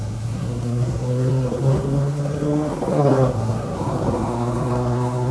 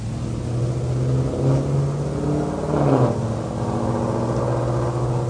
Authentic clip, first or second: second